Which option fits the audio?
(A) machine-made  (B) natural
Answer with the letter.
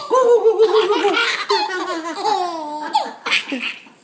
B